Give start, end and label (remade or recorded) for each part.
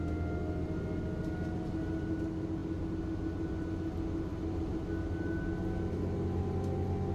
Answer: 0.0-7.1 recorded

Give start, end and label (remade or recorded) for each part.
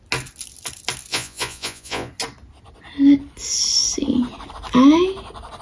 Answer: 0.0-1.1 recorded; 1.1-2.1 remade; 2.1-5.6 recorded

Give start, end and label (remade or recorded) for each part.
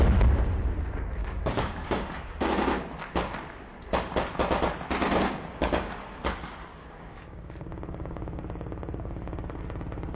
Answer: 0.0-1.2 recorded; 1.2-2.5 remade; 2.5-5.0 recorded; 5.0-5.9 remade; 5.9-6.7 recorded; 6.7-9.6 remade; 9.6-10.1 recorded